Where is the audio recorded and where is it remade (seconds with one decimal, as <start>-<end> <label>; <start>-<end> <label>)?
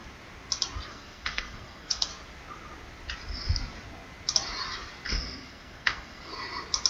0.0-0.9 recorded; 0.9-2.1 remade; 2.1-5.1 recorded; 5.1-6.3 remade; 6.3-6.9 recorded